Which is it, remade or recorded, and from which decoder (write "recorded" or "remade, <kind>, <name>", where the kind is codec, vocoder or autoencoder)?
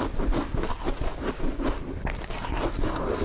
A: recorded